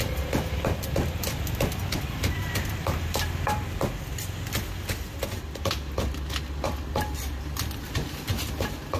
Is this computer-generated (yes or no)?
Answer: no